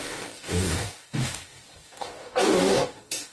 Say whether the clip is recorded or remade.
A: remade